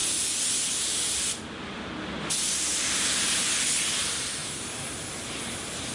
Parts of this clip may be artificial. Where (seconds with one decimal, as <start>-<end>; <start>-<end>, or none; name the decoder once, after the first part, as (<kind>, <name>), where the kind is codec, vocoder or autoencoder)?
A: none